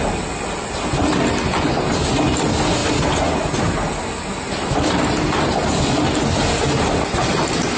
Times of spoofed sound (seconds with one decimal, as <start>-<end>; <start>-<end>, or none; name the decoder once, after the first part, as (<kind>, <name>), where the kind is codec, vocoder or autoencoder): none